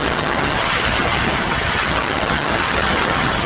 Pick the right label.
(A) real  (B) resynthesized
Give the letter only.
B